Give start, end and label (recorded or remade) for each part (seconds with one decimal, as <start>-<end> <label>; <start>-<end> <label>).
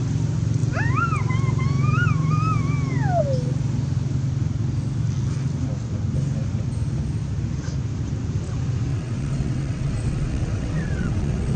0.0-8.9 recorded; 8.9-11.6 remade